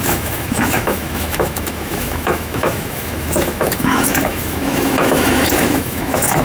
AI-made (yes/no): yes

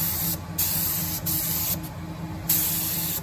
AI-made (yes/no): no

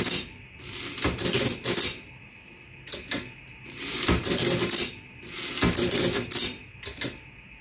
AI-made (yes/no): no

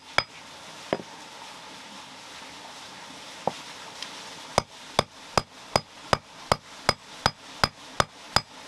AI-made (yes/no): no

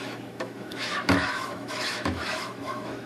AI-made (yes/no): yes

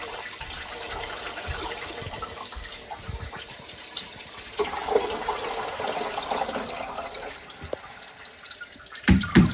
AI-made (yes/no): yes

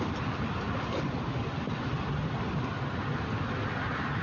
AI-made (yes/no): no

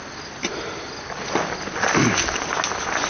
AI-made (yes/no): no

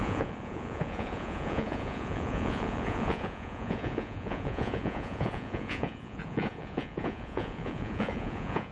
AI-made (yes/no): yes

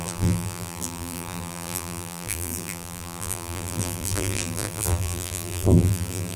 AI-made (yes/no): yes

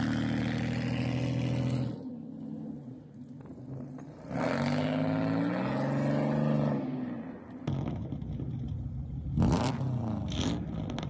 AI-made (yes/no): no